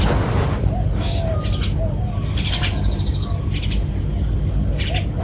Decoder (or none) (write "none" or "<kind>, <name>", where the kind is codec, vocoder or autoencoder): none